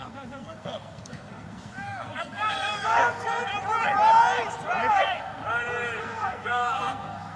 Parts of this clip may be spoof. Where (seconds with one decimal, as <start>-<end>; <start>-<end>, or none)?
0.0-3.5; 4.9-5.4; 6.0-7.4